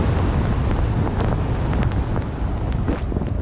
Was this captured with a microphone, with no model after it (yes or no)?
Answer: yes